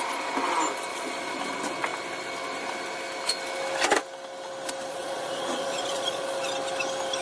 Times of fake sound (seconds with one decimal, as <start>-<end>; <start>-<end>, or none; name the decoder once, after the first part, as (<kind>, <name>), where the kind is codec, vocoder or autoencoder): 0.9-1.4 (vocoder, Vocos); 4.9-6.5